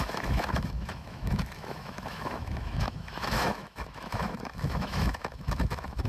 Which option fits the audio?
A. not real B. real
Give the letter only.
A